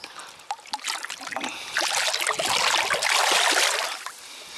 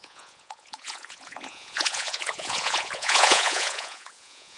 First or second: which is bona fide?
first